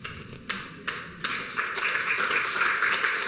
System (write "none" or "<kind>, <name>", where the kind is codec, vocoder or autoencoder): none